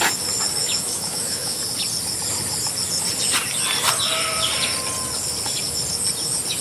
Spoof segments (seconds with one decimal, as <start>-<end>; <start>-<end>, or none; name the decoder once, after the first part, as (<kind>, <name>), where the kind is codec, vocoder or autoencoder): 0.6-1.6 (autoencoder, DAC-VAE)